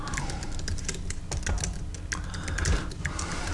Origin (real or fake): real